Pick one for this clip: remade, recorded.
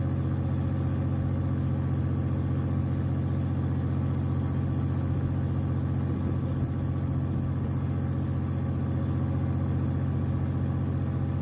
recorded